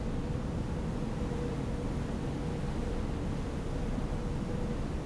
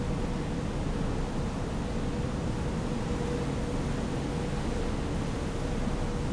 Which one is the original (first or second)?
second